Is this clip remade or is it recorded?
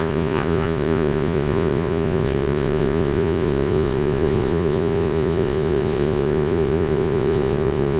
remade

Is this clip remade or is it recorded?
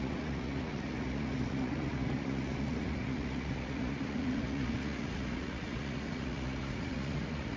remade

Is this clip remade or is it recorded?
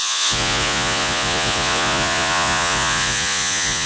remade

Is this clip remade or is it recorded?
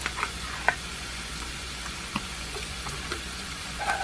remade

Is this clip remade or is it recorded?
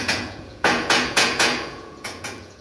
remade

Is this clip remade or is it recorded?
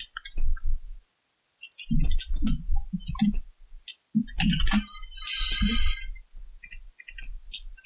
recorded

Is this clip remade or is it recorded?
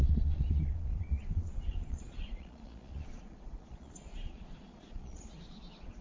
remade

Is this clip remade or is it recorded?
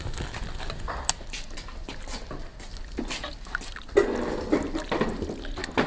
recorded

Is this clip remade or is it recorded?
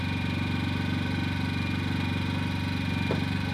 recorded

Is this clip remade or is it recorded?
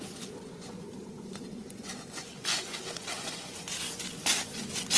remade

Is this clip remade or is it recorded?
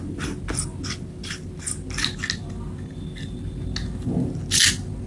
recorded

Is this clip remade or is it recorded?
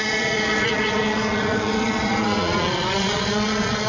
remade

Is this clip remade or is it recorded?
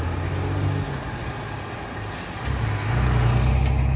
recorded